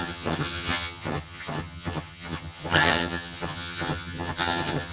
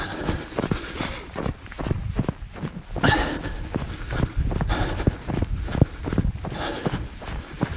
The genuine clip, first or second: second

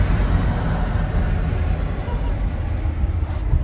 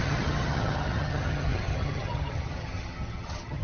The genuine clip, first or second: first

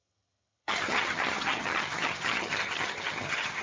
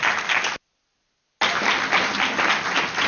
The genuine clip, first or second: second